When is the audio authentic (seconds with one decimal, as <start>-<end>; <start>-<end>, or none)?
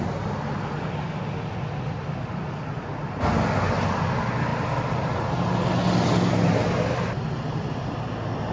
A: 0.0-8.5